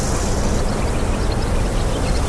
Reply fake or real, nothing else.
real